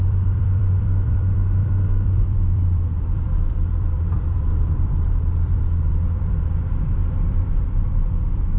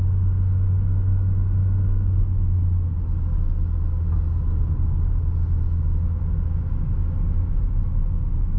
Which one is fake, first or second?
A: first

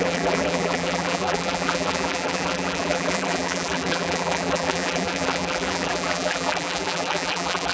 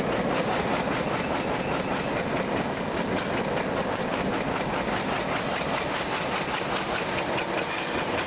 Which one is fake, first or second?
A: first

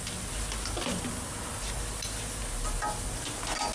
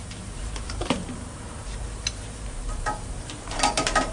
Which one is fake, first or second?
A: second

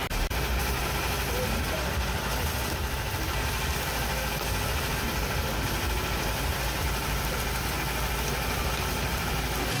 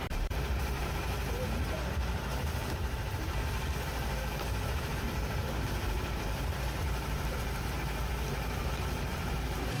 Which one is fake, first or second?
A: second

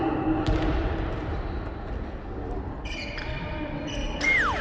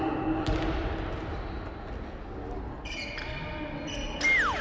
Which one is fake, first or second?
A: first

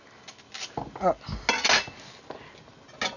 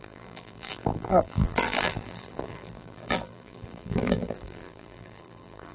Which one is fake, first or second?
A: second